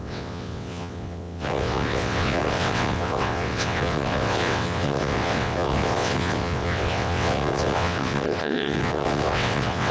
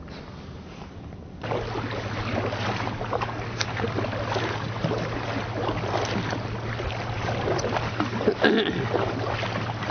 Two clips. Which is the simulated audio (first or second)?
first